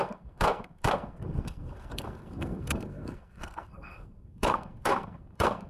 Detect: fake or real fake